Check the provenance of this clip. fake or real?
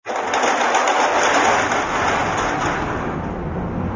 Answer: real